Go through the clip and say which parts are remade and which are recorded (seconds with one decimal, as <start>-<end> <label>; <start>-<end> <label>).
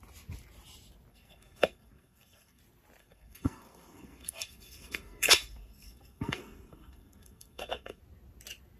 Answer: 0.0-1.1 recorded; 1.1-2.6 remade; 2.6-3.0 recorded; 3.0-8.0 remade; 8.0-8.8 recorded